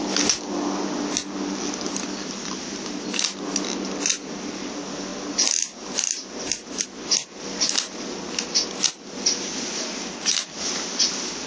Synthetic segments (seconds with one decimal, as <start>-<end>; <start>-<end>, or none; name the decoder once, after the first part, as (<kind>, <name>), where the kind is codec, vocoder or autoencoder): none